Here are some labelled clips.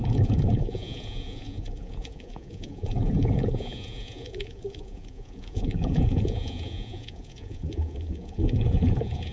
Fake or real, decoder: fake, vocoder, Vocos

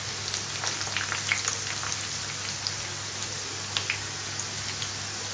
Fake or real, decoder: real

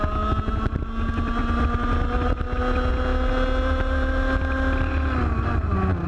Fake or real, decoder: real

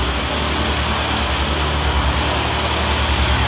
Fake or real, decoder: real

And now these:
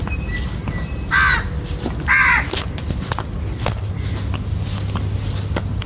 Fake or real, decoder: real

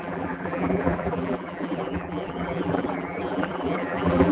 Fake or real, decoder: fake, vocoder, BigVGAN v2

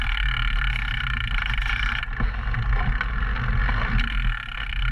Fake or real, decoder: real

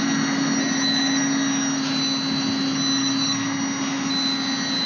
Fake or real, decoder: real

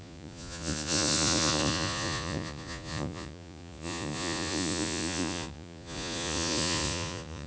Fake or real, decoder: fake, vocoder, Vocos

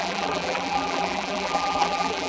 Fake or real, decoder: fake, vocoder, BigVGAN v2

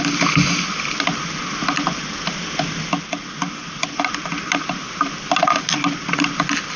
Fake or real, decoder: real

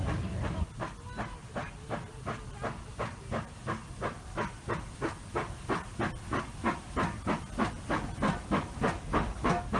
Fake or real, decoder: real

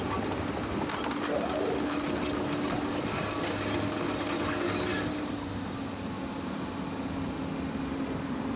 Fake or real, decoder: real